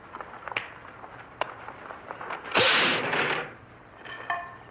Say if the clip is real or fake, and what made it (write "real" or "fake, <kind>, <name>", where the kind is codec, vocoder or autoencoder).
real